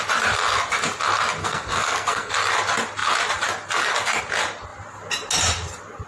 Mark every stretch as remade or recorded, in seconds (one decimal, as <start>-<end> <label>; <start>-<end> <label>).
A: 0.0-1.4 recorded; 1.4-2.3 remade; 2.3-6.1 recorded